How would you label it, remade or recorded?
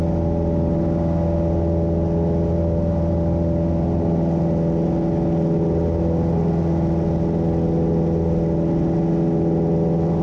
recorded